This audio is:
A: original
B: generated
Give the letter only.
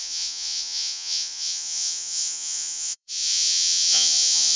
B